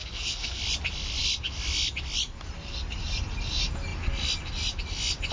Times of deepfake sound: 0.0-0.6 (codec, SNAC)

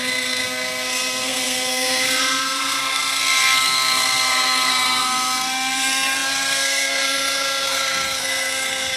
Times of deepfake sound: 0.0-9.0 (codec, SNAC)

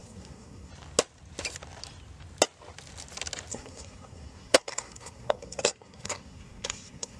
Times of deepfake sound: 0.0-0.7 (codec, SNAC); 3.5-7.2

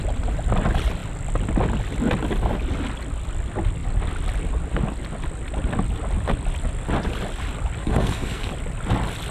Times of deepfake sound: 7.8-8.5 (codec, SNAC)

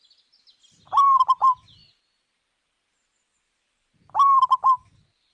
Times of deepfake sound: none

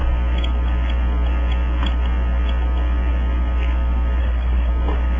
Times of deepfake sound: 4.2-4.7 (codec, SNAC)

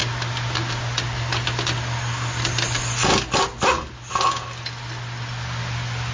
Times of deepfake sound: none